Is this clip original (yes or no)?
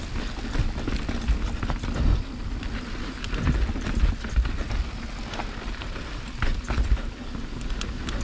yes